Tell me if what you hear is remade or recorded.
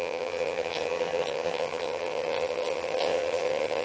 remade